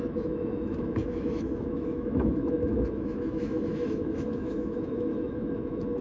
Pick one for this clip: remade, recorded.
remade